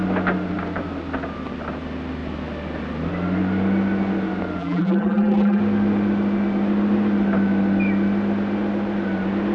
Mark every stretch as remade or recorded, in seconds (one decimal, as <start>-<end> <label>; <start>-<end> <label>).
0.0-4.6 recorded; 4.6-5.6 remade; 5.6-9.5 recorded